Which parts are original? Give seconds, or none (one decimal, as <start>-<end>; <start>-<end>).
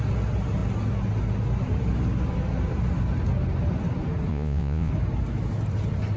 0.0-4.3; 4.9-6.2